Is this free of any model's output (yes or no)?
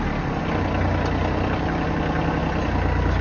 yes